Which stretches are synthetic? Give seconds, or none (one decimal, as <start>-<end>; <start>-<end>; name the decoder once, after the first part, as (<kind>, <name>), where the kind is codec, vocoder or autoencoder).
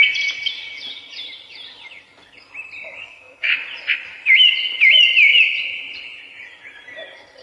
3.0-3.5 (codec, SNAC)